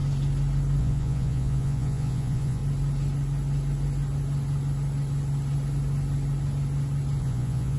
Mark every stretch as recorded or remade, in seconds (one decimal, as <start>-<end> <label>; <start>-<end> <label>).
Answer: 0.0-0.8 recorded; 0.8-2.6 remade; 2.6-7.2 recorded; 7.2-7.8 remade

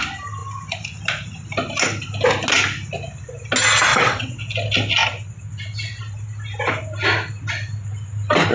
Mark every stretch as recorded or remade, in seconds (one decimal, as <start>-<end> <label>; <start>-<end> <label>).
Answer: 0.0-3.9 recorded; 3.9-4.4 remade; 4.4-8.5 recorded

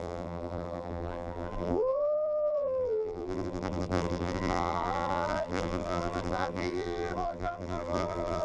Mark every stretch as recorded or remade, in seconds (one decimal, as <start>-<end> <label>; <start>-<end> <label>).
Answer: 0.0-8.4 remade

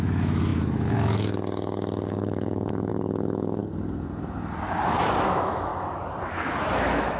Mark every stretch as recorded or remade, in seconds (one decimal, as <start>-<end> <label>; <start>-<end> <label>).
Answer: 0.0-3.6 remade; 3.6-5.2 recorded; 5.2-5.7 remade; 5.7-6.2 recorded; 6.2-7.2 remade

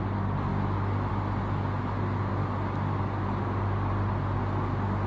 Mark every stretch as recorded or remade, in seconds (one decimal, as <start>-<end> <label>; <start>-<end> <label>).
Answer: 0.0-5.1 recorded

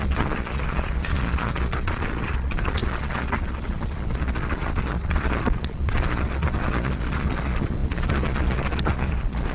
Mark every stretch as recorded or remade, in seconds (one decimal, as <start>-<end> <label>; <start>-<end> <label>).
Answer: 0.0-9.5 remade

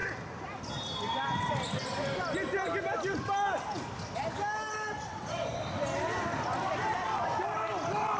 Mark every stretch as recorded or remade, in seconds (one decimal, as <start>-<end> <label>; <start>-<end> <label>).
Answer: 0.0-8.2 recorded